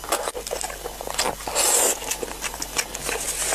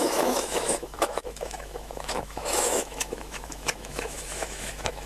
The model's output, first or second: second